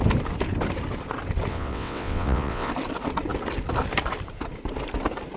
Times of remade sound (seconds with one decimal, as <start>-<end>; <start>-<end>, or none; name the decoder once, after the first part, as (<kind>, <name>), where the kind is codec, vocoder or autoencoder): 1.5-2.7 (vocoder, WaveNeXt)